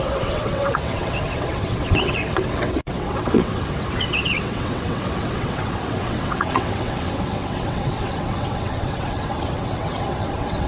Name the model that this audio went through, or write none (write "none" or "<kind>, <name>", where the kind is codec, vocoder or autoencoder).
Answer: vocoder, WaveNeXt